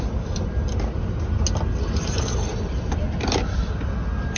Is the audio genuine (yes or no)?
yes